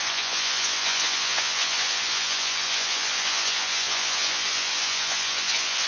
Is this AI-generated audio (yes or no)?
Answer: yes